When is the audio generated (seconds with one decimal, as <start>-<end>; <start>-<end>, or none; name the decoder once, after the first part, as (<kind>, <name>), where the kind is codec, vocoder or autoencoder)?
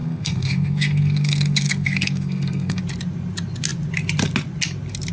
0.0-2.8 (codec, SNAC)